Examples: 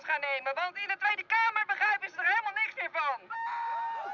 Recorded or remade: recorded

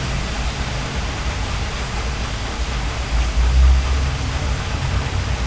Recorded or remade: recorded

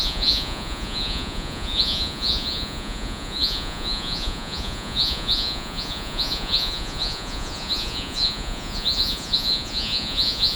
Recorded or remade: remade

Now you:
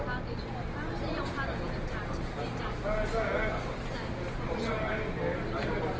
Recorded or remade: recorded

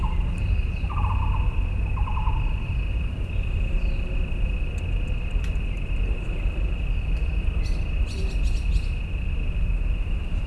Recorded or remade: recorded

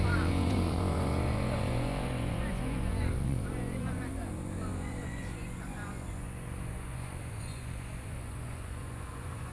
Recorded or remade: remade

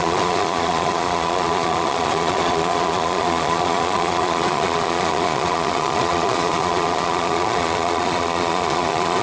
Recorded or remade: remade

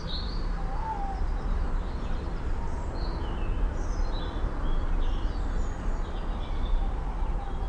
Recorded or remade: recorded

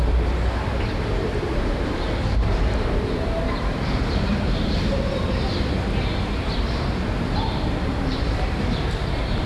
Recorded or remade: remade